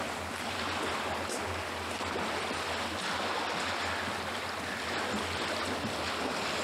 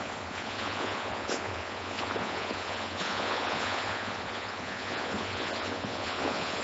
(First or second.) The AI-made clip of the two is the second